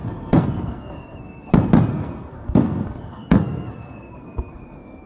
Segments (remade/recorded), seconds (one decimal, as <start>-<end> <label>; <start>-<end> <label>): 0.0-1.5 remade; 1.5-1.9 recorded; 1.9-5.1 remade